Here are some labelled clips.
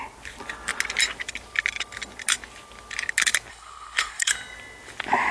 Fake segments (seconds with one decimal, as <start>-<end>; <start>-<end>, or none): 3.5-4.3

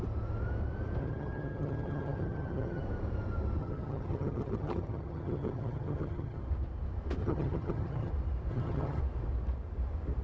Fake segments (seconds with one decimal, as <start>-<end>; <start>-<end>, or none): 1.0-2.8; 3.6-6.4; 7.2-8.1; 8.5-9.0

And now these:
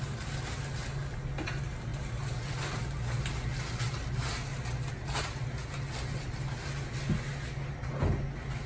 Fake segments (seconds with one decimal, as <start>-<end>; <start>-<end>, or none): none

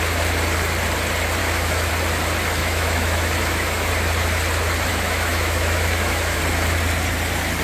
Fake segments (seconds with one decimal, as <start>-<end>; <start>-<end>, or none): 1.4-1.9; 2.6-3.9; 4.9-6.4

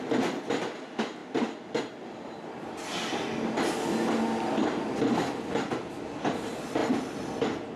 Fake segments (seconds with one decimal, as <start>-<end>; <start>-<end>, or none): none

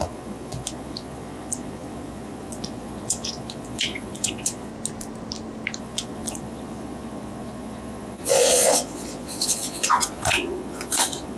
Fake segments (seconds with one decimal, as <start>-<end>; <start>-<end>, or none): 0.0-4.7; 5.8-11.4

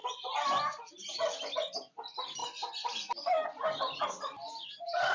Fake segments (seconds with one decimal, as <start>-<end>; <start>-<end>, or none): none